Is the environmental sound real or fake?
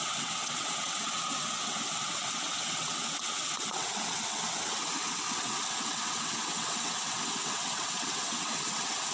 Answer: fake